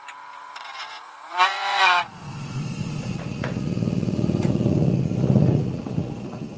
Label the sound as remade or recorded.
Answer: remade